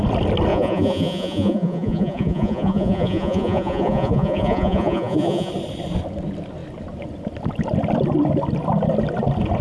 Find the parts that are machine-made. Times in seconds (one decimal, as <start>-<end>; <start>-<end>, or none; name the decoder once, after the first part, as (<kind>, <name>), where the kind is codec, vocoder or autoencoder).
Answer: 0.5-5.5 (vocoder, Vocos)